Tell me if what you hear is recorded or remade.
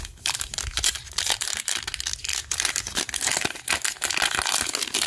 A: recorded